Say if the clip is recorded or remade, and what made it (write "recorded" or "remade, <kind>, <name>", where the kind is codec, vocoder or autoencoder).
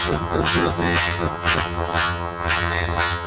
remade, vocoder, HiFi-GAN